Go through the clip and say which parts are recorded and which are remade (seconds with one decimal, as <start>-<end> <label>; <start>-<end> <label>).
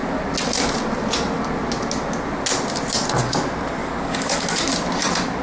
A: 0.0-3.8 recorded; 3.8-4.6 remade; 4.6-5.4 recorded